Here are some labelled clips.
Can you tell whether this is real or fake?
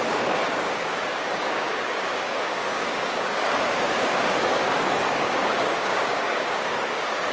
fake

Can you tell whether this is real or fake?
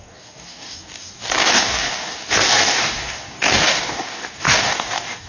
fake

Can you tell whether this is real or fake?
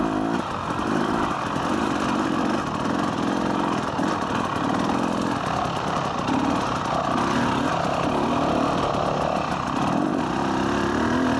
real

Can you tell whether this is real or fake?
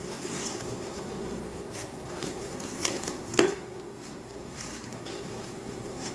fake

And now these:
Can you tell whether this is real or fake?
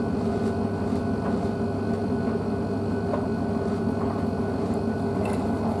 real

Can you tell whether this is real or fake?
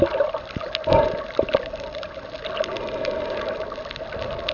real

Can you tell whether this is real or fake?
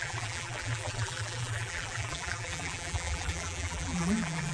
fake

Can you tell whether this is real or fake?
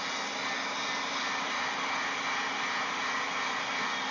real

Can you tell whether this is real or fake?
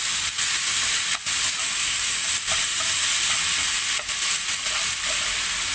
real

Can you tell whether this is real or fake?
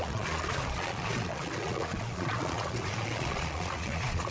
fake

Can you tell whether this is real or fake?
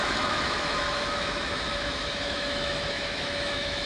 fake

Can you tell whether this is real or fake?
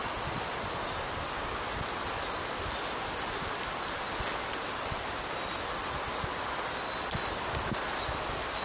real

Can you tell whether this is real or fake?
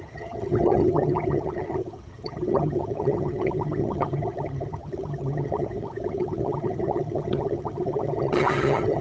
fake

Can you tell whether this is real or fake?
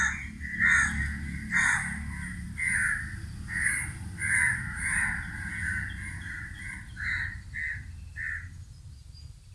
real